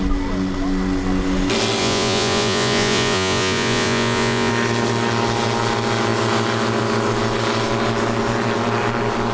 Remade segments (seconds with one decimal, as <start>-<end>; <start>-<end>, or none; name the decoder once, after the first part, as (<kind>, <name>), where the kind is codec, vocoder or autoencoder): 1.8-4.5 (vocoder, Vocos)